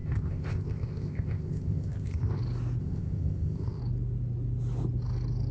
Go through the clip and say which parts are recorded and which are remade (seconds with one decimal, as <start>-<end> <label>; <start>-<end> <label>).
0.0-2.4 remade; 2.4-2.8 recorded; 2.8-3.8 remade; 3.8-5.5 recorded